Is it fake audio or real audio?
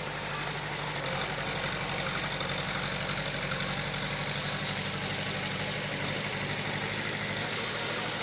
real